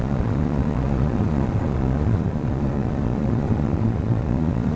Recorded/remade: remade